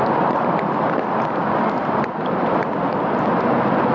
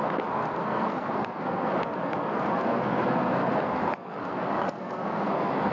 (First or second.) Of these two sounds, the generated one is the second